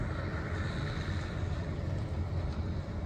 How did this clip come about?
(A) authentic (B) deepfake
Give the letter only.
A